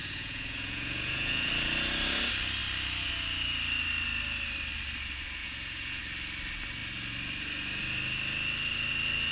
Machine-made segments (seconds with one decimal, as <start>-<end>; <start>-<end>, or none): 0.0-1.5; 5.4-6.0